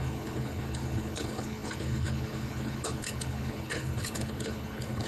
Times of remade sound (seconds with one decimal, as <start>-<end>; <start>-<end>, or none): 0.0-5.1